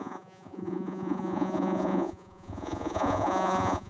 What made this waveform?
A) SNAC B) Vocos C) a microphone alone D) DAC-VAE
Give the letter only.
B